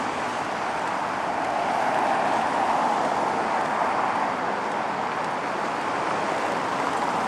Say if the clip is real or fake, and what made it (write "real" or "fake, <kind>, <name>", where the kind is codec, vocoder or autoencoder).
real